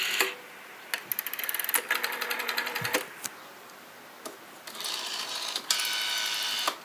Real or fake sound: real